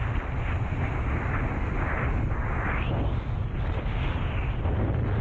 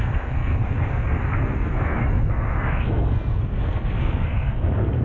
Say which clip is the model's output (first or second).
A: second